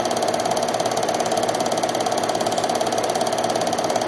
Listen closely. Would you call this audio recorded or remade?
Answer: recorded